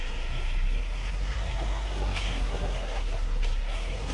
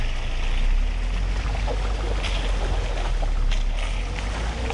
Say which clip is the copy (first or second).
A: first